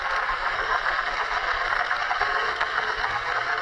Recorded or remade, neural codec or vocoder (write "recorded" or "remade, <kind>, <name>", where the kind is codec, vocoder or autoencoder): remade, codec, SNAC